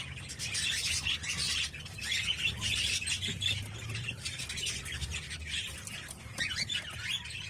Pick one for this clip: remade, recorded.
recorded